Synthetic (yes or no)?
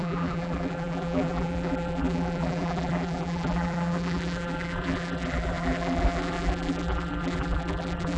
yes